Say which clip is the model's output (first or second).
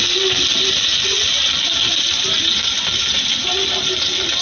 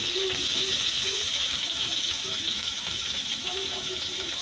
second